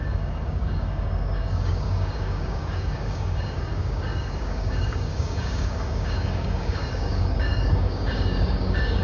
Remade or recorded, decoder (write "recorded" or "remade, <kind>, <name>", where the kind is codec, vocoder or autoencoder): remade, codec, DAC